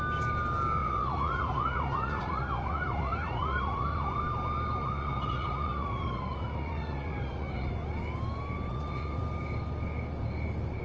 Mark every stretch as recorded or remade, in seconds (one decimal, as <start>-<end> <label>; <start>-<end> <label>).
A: 0.0-0.8 recorded; 0.8-4.2 remade; 4.2-4.8 recorded; 4.8-7.7 remade; 7.7-8.7 recorded; 8.7-9.2 remade; 9.2-10.8 recorded